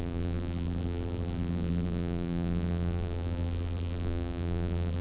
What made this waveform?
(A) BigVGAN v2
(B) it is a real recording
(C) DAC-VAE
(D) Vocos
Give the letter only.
A